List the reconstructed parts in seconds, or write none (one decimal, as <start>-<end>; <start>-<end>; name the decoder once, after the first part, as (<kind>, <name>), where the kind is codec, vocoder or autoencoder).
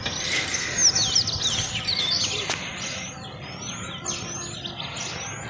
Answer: none